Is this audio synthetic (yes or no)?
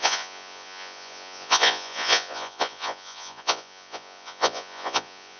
yes